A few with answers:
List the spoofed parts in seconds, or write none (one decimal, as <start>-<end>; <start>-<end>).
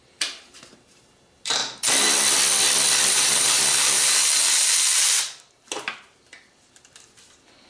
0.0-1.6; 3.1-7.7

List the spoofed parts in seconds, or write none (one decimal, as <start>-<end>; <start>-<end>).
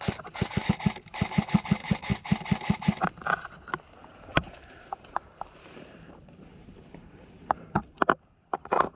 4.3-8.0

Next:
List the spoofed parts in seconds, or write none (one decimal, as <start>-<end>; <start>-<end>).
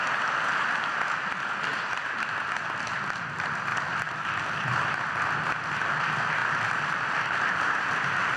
1.7-2.4; 6.4-8.4